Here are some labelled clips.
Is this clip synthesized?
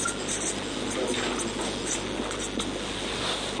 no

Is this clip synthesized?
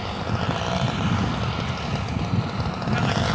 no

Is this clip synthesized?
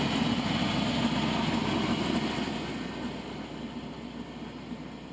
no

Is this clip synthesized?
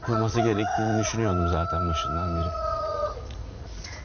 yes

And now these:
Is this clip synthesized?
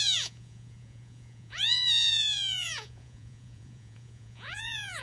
yes